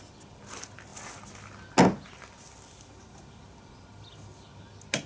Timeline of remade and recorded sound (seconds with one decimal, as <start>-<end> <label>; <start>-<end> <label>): 0.0-5.1 recorded